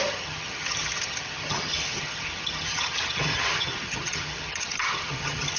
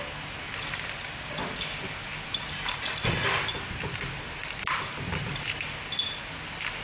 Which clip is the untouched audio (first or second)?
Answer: second